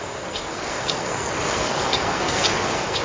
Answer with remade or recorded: remade